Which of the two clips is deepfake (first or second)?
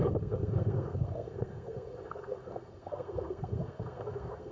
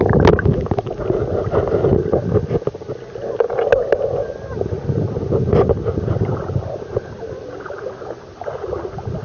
first